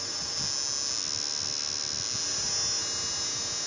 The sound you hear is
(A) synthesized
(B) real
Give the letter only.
B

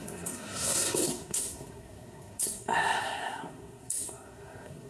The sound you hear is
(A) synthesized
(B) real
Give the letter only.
A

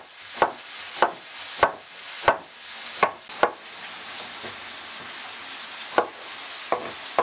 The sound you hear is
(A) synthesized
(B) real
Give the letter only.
B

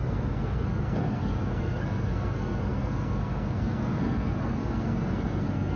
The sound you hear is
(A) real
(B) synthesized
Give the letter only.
B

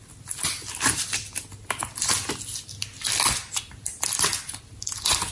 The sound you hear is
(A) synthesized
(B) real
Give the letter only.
B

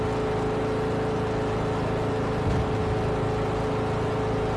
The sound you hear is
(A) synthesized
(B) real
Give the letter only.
B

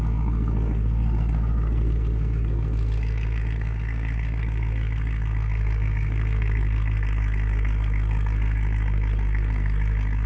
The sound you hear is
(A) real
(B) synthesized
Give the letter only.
B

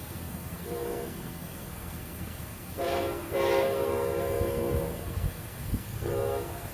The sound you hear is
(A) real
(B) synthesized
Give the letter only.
B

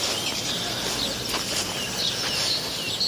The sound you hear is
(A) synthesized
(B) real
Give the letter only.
B